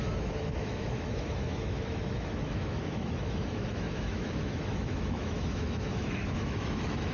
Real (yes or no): no